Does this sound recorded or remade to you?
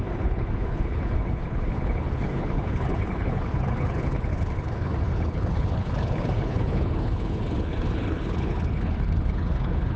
remade